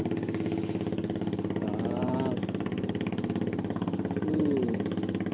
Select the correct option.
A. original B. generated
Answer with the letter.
A